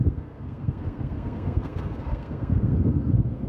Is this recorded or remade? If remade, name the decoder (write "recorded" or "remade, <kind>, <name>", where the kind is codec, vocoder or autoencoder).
remade, codec, SNAC